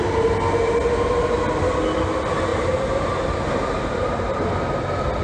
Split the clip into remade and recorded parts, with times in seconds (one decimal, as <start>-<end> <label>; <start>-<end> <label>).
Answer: 0.0-2.5 recorded; 2.5-4.4 remade; 4.4-5.2 recorded